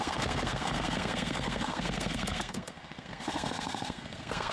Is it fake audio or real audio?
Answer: fake